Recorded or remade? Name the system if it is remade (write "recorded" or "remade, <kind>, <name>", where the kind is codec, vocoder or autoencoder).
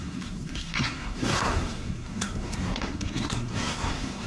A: remade, codec, SNAC